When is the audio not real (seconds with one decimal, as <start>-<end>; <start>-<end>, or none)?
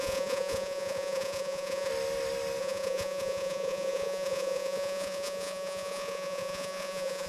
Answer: 0.0-1.9; 2.6-7.3